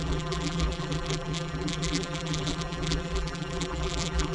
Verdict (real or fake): fake